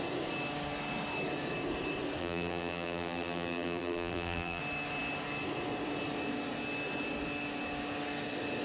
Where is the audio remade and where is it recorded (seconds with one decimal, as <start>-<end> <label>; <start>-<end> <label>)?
0.0-2.2 recorded; 2.2-4.6 remade; 4.6-8.6 recorded